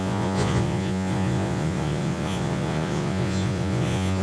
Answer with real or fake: fake